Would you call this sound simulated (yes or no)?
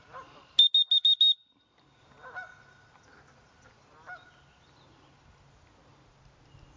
no